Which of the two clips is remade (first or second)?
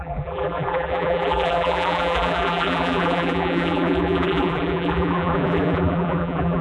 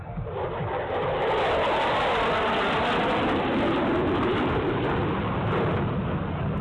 first